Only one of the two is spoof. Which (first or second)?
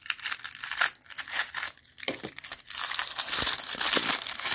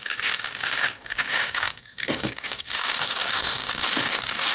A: second